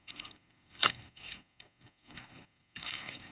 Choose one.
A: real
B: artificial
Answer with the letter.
B